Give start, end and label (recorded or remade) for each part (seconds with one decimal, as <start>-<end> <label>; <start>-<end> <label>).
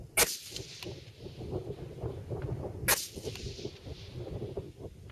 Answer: 0.0-5.1 recorded